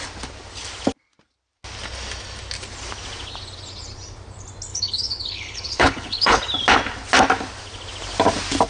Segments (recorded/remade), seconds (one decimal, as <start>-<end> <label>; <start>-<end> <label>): 0.0-4.7 recorded; 4.7-6.4 remade; 6.4-8.7 recorded